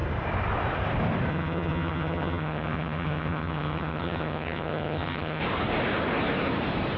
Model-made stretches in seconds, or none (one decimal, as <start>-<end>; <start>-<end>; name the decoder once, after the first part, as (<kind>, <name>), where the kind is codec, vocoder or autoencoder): 1.3-5.4 (vocoder, HiFi-GAN)